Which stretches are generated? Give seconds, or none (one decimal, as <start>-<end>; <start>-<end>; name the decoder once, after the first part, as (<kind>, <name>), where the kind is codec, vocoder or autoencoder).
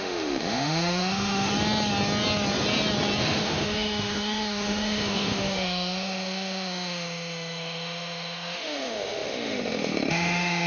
0.0-1.5 (autoencoder, DAC-VAE); 3.2-10.7